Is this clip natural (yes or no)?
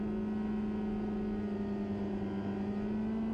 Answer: yes